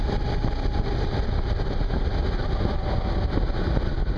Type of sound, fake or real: real